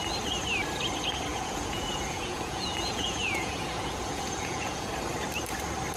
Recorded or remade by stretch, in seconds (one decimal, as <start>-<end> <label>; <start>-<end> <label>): 0.0-1.3 recorded; 1.3-4.9 remade; 4.9-6.0 recorded